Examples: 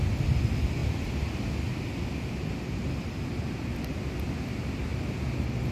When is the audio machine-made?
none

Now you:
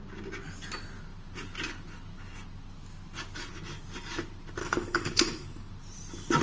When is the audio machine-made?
4.6-5.7 (codec, DAC)

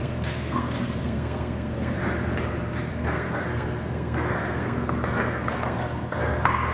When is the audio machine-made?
0.0-2.0 (codec, SNAC); 2.9-6.7

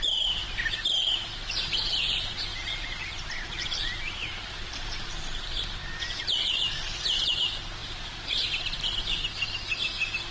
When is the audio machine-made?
2.5-7.3 (vocoder, BigVGAN v2)

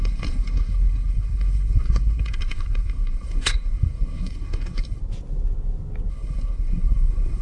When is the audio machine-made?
0.0-5.0 (codec, SNAC); 6.1-7.4

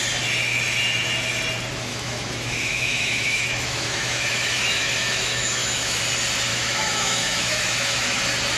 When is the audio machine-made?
1.9-6.0 (autoencoder, DAC-VAE); 6.5-8.2

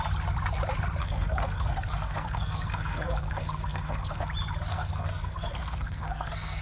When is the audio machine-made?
1.0-4.3 (codec, SNAC); 4.7-6.6

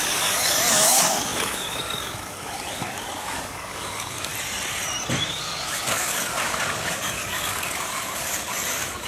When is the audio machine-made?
0.0-4.3 (codec, DAC); 5.3-9.1